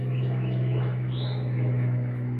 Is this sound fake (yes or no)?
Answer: yes